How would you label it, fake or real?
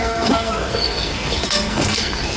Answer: fake